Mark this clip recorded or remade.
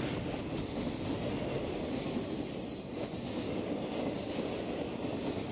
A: recorded